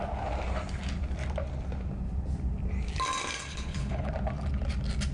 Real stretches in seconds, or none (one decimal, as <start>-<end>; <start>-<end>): 0.0-3.5; 4.1-5.1